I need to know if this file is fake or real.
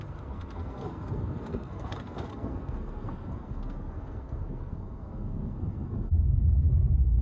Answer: fake